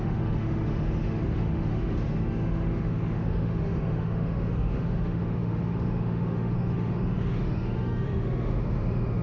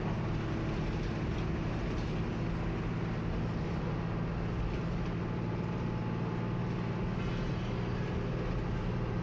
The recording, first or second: second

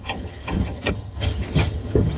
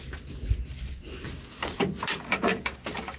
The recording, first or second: second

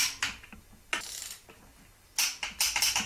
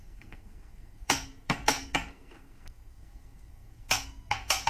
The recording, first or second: first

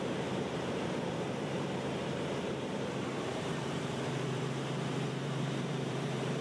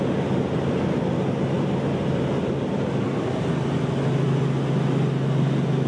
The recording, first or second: second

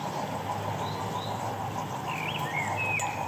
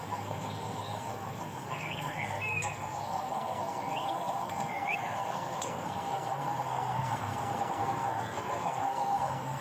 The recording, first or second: first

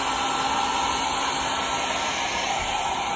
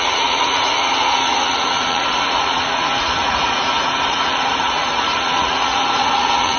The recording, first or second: first